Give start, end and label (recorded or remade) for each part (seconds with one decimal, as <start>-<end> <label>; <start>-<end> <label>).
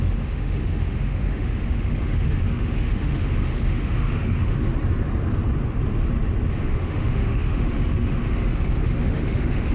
0.0-4.7 remade; 4.7-6.6 recorded; 6.6-9.7 remade